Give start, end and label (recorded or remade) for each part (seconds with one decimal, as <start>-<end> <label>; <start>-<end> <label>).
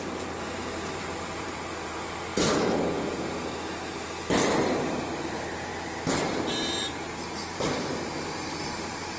0.0-2.3 remade; 2.3-5.1 recorded; 5.1-9.2 remade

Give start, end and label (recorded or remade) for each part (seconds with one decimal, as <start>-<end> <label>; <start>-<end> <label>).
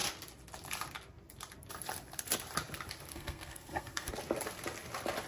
0.0-3.1 recorded; 3.1-4.1 remade; 4.1-5.3 recorded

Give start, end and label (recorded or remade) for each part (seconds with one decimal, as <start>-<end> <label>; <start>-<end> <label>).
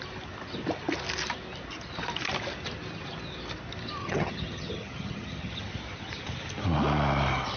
0.0-4.0 recorded; 4.0-5.6 remade; 5.6-7.6 recorded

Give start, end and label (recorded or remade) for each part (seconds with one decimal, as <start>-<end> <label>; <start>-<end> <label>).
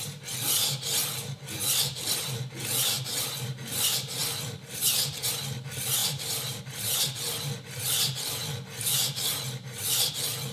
0.0-4.2 recorded; 4.2-4.8 remade; 4.8-6.0 recorded; 6.0-6.6 remade; 6.6-10.5 recorded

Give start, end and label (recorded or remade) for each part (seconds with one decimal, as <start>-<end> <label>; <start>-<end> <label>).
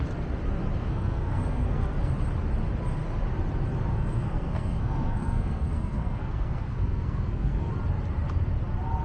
0.0-0.8 recorded; 0.8-2.1 remade; 2.1-3.9 recorded; 3.9-7.7 remade; 7.7-9.0 recorded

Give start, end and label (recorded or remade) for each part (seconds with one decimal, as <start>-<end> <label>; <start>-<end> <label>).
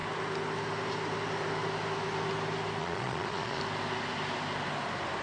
0.0-2.8 recorded; 2.8-3.6 remade; 3.6-5.2 recorded